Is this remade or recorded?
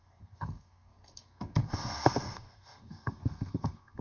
remade